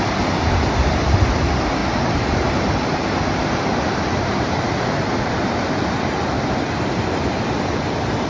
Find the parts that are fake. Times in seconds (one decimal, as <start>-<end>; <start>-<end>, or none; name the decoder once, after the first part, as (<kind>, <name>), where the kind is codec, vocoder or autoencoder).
1.8-6.2 (vocoder, BigVGAN v2)